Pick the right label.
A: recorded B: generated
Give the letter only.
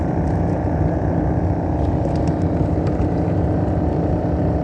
A